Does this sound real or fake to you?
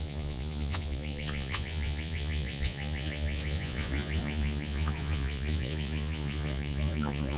fake